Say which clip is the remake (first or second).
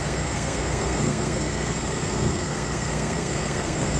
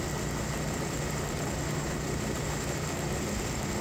first